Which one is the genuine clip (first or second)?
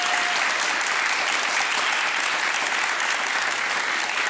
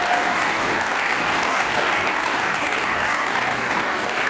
first